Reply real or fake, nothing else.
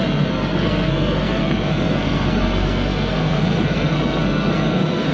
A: fake